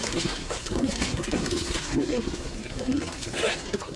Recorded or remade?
remade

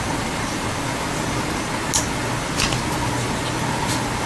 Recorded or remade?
recorded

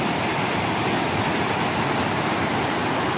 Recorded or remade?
recorded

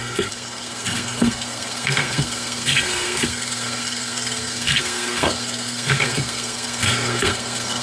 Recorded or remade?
remade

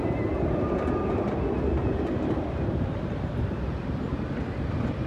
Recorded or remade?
recorded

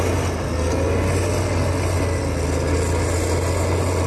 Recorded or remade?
recorded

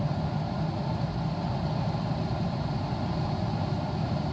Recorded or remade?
recorded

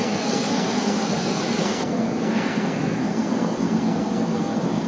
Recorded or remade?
remade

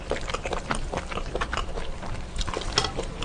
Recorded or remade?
recorded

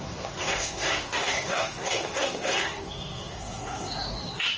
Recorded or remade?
remade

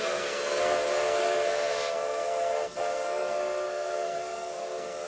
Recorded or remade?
remade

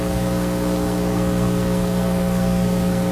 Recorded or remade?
remade